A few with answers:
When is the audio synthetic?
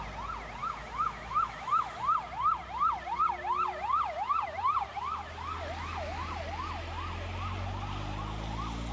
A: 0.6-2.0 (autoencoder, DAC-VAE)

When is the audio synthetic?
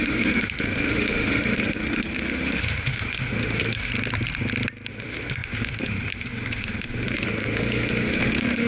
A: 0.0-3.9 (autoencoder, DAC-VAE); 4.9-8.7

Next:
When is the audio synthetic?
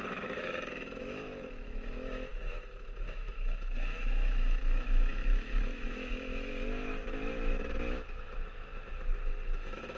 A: 0.0-10.0 (autoencoder, DAC-VAE)